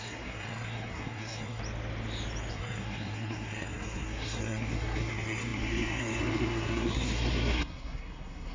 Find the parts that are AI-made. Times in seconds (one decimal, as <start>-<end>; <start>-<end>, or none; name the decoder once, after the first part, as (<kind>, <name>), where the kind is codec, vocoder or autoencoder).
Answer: 0.0-1.6 (codec, SNAC); 2.5-8.5